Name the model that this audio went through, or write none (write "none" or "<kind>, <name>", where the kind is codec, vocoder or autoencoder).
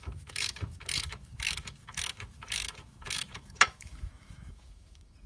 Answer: autoencoder, DAC-VAE